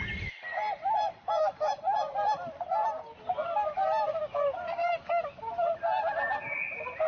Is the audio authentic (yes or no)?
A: yes